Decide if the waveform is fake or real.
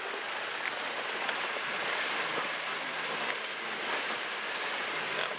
real